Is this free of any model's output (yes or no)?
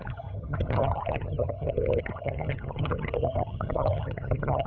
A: no